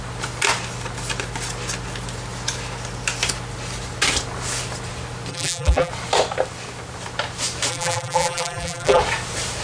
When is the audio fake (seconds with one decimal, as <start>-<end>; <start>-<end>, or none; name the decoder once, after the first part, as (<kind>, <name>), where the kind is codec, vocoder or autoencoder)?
5.3-5.9 (vocoder, BigVGAN v2); 7.7-9.0